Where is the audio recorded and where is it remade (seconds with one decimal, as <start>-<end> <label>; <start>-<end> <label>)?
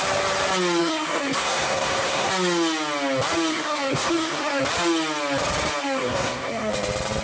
0.0-0.8 recorded; 0.8-2.3 remade; 2.3-3.5 recorded; 3.5-4.6 remade; 4.6-5.8 recorded; 5.8-6.7 remade; 6.7-7.2 recorded